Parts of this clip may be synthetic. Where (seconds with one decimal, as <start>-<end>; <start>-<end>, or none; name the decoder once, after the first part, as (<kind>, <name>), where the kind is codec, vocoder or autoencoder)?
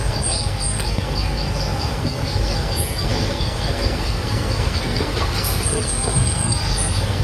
0.0-7.2 (codec, SNAC)